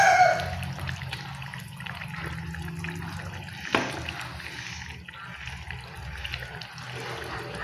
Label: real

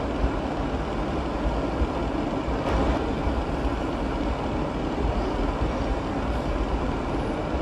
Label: real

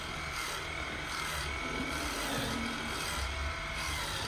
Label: real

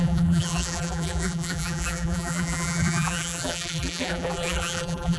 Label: fake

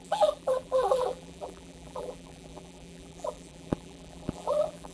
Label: fake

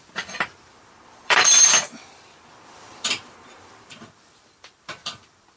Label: fake